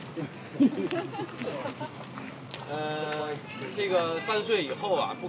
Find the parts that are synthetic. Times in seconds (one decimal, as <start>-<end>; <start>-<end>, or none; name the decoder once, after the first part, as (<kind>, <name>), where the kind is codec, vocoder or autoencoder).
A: none